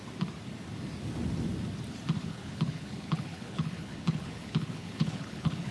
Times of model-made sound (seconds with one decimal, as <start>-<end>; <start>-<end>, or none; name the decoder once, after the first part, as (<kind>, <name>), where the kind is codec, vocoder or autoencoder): 2.2-5.7 (codec, HILCodec)